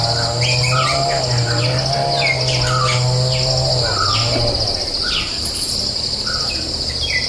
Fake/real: real